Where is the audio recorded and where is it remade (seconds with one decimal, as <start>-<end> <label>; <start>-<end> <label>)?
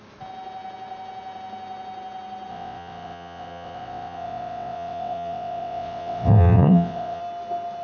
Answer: 0.0-2.5 recorded; 2.5-7.2 remade; 7.2-7.8 recorded